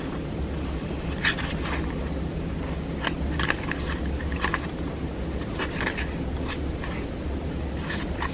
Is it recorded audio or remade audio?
remade